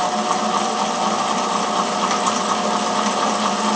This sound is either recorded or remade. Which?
recorded